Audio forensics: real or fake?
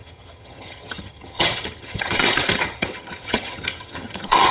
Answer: fake